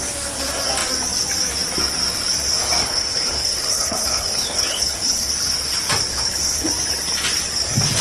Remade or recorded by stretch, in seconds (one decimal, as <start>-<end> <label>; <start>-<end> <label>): 0.0-2.8 recorded; 2.8-5.3 remade; 5.3-6.1 recorded; 6.1-6.7 remade; 6.7-8.0 recorded

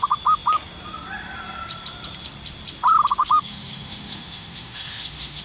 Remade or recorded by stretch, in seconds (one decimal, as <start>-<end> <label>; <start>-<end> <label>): 0.0-3.2 recorded; 3.2-5.4 remade

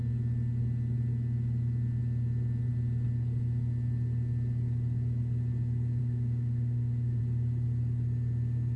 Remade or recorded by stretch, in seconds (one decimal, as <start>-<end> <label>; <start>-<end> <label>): 0.0-6.0 recorded; 6.0-7.2 remade; 7.2-8.8 recorded

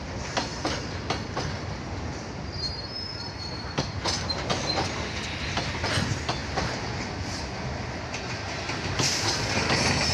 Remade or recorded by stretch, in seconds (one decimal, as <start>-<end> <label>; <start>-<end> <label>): 0.0-10.1 recorded

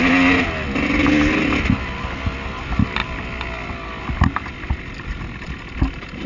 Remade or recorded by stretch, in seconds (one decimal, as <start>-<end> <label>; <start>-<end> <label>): 0.0-6.3 recorded

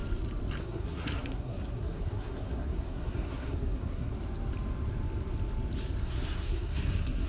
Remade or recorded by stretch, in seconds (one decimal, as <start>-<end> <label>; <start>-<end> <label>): 0.0-0.6 recorded; 0.6-4.1 remade; 4.1-6.0 recorded; 6.0-7.3 remade

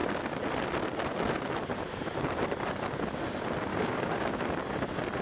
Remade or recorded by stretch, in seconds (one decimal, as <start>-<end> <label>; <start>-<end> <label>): 0.0-3.7 recorded; 3.7-4.4 remade; 4.4-5.2 recorded